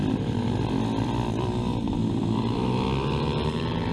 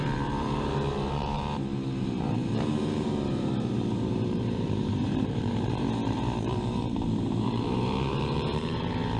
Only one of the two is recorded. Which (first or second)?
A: first